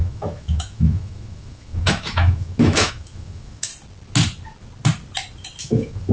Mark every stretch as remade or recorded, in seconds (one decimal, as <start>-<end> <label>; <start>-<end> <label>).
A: 0.0-3.7 remade; 3.7-5.6 recorded; 5.6-6.1 remade